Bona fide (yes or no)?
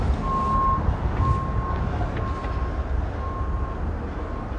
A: yes